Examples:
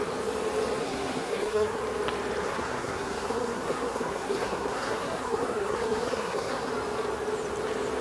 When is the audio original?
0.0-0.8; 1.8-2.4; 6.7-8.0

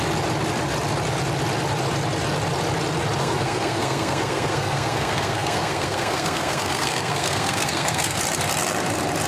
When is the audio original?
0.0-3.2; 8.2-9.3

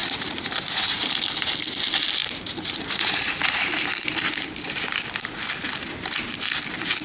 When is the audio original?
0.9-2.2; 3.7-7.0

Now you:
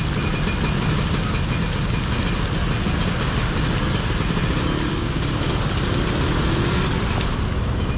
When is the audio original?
0.0-4.9; 5.5-8.0

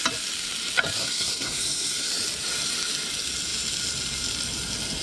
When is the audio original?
0.0-1.0; 2.1-5.0

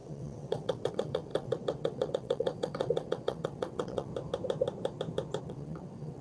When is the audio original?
4.1-5.4

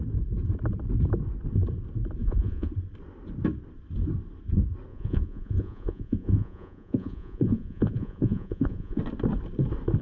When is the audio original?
0.0-2.2; 2.7-4.9; 9.0-10.0